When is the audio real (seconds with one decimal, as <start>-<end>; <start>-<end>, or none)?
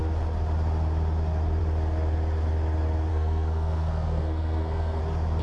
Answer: 0.0-3.1; 5.0-5.4